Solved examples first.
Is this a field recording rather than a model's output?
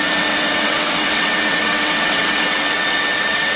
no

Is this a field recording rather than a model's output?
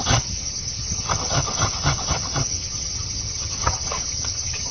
no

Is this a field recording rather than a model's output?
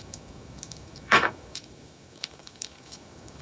no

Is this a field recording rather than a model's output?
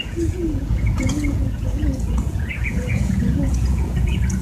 no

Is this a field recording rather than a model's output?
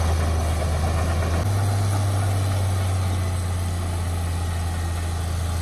yes